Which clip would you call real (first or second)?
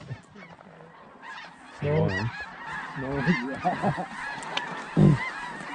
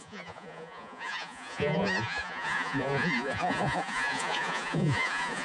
first